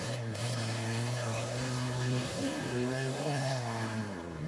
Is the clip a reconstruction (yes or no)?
yes